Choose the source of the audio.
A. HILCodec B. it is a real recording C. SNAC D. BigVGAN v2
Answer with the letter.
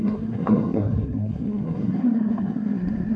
C